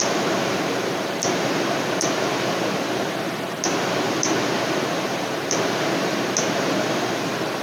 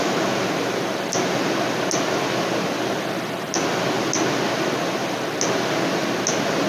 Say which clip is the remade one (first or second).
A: first